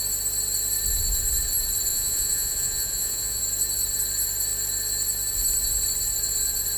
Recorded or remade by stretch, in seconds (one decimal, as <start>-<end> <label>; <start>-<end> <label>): 0.0-1.9 recorded; 1.9-3.4 remade; 3.4-6.8 recorded